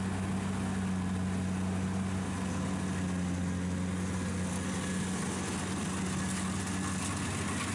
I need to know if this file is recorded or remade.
recorded